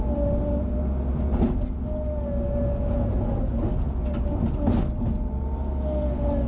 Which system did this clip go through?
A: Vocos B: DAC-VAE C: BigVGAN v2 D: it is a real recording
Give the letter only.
D